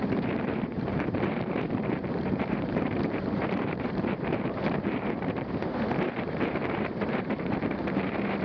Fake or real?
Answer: fake